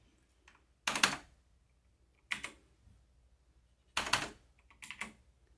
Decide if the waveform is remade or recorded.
recorded